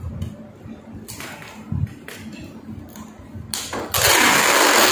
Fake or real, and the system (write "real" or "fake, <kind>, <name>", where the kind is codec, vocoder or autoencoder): real